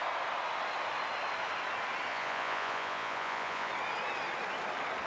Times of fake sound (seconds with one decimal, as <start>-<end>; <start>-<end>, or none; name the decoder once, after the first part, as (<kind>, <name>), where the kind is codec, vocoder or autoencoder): 2.1-3.7 (vocoder, Vocos)